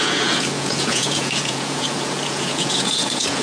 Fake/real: fake